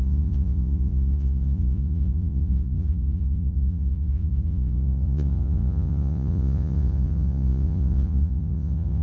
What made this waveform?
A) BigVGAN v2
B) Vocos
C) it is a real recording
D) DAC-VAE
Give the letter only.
B